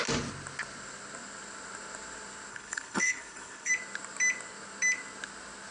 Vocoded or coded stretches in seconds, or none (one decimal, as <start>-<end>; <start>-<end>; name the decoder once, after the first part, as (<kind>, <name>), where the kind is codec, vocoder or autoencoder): 2.5-3.7 (codec, HILCodec)